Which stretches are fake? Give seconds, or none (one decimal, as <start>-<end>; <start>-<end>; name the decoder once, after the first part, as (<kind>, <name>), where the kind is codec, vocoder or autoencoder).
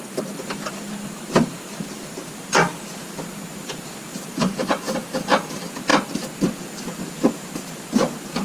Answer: 0.0-5.9 (vocoder, BigVGAN v2); 6.6-8.4